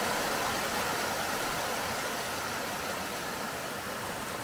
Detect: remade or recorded recorded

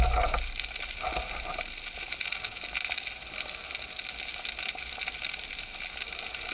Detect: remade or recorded recorded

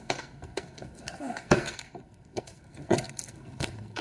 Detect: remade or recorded remade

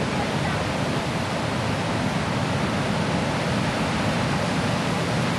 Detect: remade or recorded recorded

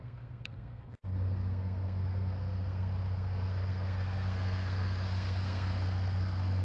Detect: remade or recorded remade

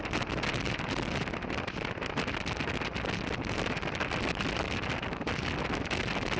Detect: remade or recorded recorded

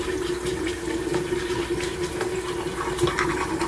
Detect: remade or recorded recorded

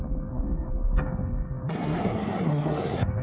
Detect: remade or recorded remade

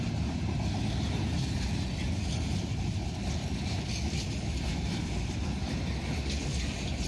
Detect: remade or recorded recorded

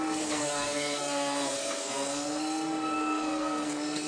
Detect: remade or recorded remade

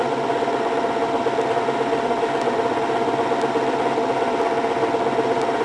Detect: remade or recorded recorded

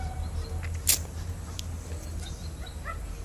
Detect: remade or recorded recorded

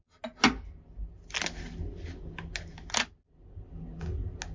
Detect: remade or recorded recorded